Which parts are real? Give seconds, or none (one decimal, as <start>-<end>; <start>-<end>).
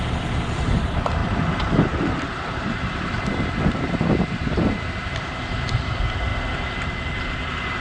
6.3-7.2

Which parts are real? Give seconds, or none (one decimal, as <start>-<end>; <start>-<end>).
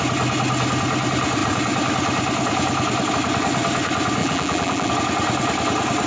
0.0-4.2; 4.9-6.1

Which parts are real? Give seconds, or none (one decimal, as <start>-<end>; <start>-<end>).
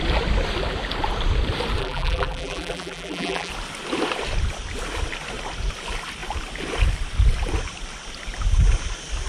0.0-1.8; 3.5-9.3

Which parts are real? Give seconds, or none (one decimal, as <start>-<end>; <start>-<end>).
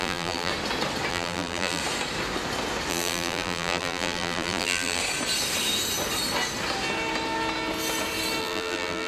0.5-1.1; 1.8-2.9; 5.0-8.4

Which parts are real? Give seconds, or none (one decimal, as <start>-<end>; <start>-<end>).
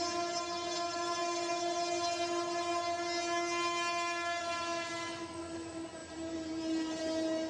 0.0-6.0; 7.0-7.5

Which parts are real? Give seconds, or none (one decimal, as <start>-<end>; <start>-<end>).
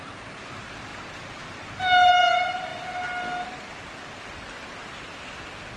0.9-2.2; 2.7-5.2